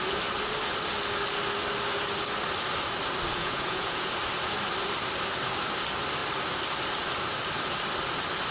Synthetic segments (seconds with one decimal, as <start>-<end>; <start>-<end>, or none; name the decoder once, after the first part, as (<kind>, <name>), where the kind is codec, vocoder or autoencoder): 3.3-4.1 (vocoder, Vocos)